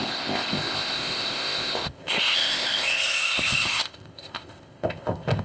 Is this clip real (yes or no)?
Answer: no